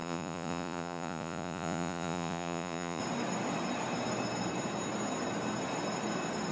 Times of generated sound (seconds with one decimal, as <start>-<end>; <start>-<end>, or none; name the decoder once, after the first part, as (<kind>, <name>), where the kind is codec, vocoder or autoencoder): 0.0-3.0 (vocoder, Vocos)